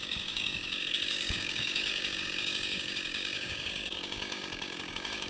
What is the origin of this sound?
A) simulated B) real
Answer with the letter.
A